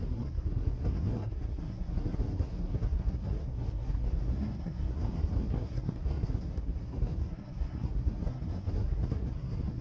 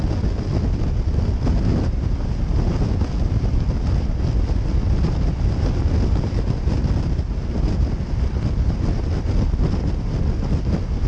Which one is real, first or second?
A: second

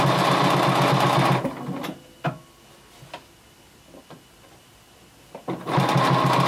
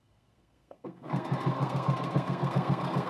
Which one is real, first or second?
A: first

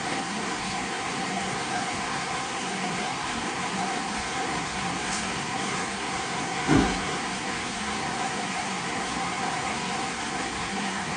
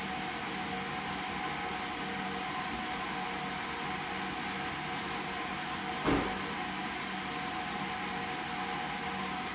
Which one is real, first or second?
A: second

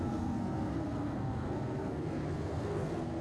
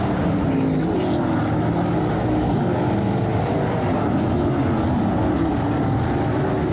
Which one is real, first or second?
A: second